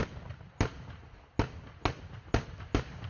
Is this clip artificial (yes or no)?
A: no